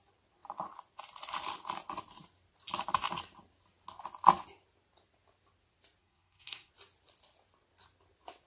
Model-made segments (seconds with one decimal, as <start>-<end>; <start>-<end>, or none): 6.0-6.7

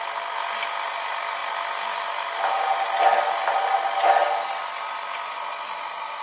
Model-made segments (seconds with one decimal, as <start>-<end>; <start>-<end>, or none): none

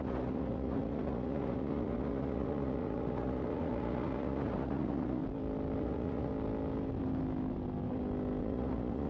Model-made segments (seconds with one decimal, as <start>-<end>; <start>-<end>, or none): 0.0-5.2; 5.8-6.3; 8.4-9.1

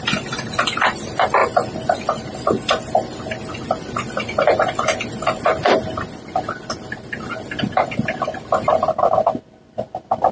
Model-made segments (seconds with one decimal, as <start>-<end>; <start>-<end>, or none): none

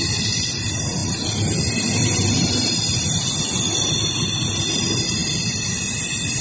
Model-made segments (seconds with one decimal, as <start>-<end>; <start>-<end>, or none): none

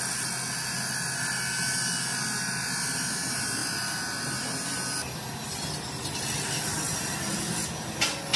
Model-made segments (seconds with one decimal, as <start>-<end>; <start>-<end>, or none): none